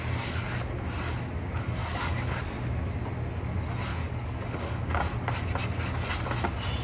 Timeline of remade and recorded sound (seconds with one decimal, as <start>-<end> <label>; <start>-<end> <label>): 0.0-1.8 recorded; 1.8-2.4 remade; 2.4-3.9 recorded; 3.9-4.8 remade; 4.8-6.8 recorded

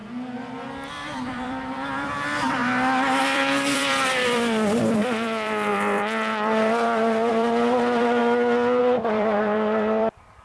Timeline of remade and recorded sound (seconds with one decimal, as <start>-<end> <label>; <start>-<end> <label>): 0.0-0.9 recorded; 0.9-2.6 remade; 2.6-3.2 recorded; 3.2-8.2 remade; 8.2-8.8 recorded; 8.8-10.4 remade

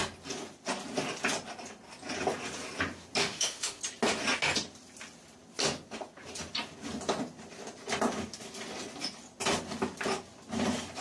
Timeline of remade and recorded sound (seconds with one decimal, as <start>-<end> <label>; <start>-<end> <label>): 0.0-3.2 recorded; 3.2-3.8 remade; 3.8-11.0 recorded